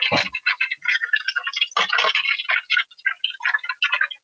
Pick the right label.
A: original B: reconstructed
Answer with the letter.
A